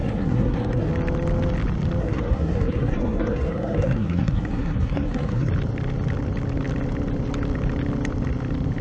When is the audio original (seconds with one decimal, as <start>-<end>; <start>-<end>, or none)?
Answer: 0.9-2.0; 5.5-8.8